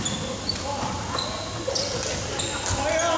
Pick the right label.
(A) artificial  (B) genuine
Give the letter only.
B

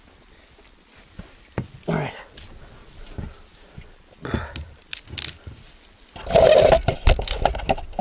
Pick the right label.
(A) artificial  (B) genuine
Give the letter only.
B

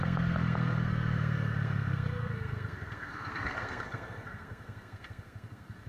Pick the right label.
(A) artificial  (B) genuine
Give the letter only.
A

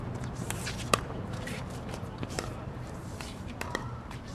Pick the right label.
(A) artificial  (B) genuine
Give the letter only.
A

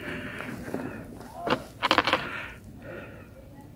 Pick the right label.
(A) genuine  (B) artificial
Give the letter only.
A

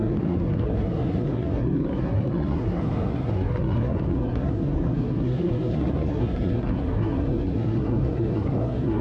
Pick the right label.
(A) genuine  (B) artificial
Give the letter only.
B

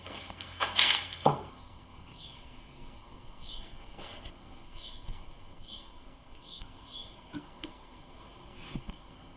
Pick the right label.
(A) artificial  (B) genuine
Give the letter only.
A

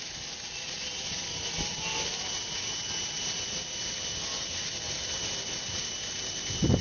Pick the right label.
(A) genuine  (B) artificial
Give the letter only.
A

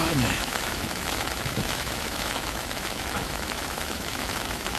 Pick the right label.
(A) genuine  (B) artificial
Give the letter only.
B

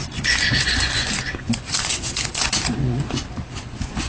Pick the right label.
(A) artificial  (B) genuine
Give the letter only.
A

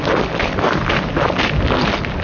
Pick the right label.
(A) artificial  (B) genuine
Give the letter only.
B